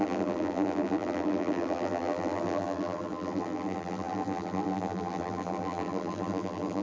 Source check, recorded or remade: remade